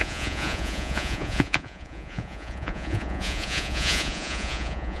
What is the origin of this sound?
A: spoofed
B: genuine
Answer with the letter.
A